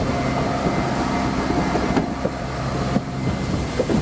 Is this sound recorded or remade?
recorded